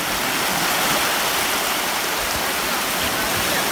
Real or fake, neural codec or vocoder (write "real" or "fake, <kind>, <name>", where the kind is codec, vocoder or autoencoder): real